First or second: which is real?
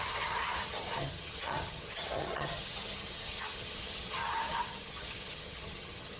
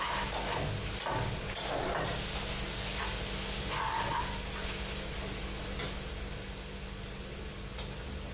second